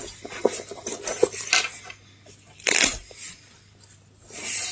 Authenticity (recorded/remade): recorded